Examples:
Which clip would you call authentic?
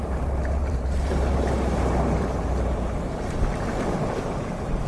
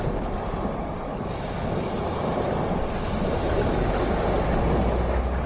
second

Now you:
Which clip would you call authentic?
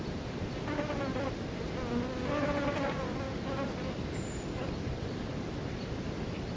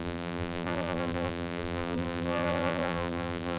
first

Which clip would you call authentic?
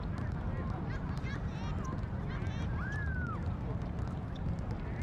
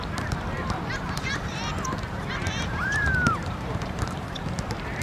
first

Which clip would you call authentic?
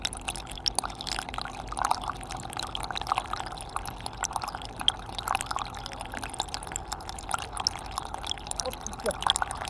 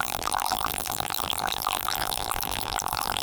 first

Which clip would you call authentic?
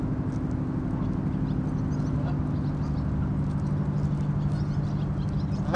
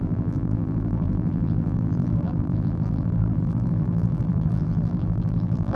first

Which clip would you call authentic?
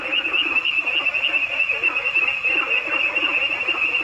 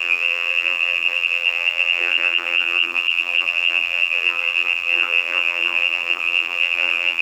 first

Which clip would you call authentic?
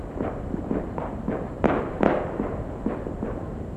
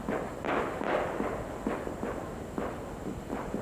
second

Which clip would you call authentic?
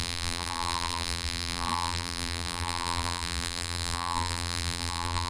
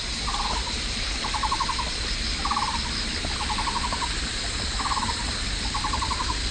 second